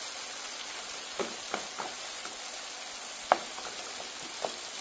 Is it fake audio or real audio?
real